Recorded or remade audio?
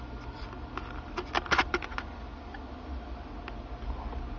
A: recorded